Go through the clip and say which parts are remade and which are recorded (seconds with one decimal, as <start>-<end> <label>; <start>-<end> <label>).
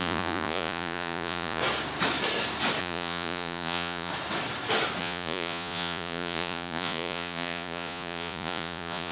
0.0-1.6 remade; 1.6-2.8 recorded; 2.8-4.1 remade; 4.1-5.0 recorded; 5.0-9.1 remade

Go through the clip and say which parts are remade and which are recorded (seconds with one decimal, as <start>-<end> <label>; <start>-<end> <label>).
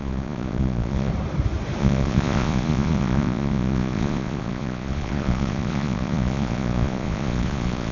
0.0-1.1 remade; 1.1-1.8 recorded; 1.8-7.9 remade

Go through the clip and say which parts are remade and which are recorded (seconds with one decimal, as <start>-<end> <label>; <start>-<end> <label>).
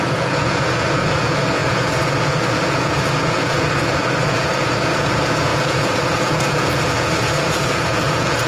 0.0-8.5 remade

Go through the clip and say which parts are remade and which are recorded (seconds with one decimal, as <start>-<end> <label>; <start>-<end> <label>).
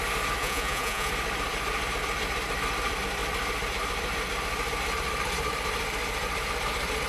0.0-0.4 recorded; 0.4-1.1 remade; 1.1-7.1 recorded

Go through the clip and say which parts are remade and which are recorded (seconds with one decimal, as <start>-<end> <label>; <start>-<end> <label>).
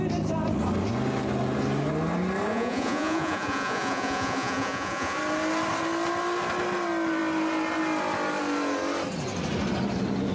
0.0-2.5 recorded; 2.5-5.2 remade; 5.2-10.3 recorded